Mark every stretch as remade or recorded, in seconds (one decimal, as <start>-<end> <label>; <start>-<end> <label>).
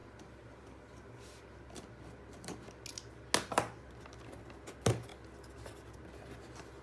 0.0-6.8 recorded